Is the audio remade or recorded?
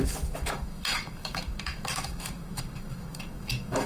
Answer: remade